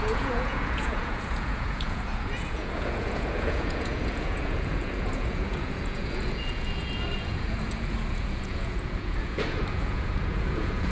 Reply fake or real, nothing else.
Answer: fake